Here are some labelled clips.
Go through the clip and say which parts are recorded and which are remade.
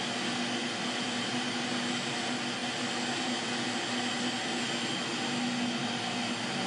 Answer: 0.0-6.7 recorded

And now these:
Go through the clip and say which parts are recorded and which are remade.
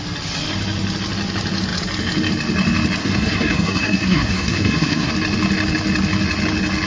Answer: 0.0-3.0 recorded; 3.0-5.1 remade; 5.1-6.9 recorded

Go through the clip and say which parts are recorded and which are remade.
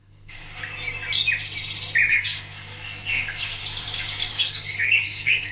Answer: 0.0-0.6 remade; 0.6-2.1 recorded; 2.1-3.6 remade; 3.6-4.3 recorded; 4.3-5.5 remade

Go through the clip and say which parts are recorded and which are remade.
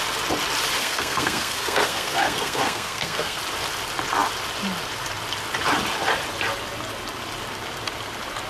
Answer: 0.0-0.8 recorded; 0.8-3.4 remade; 3.4-8.5 recorded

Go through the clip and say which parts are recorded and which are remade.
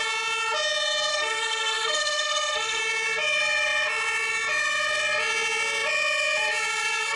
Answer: 0.0-1.1 recorded; 1.1-2.8 remade; 2.8-7.2 recorded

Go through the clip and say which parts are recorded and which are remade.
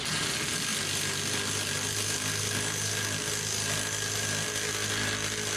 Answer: 0.0-5.6 recorded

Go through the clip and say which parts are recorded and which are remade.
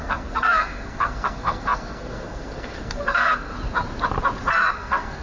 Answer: 0.0-3.5 remade; 3.5-4.5 recorded; 4.5-5.2 remade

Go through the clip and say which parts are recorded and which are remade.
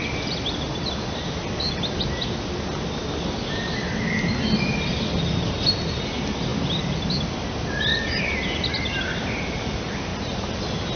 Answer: 0.0-11.0 recorded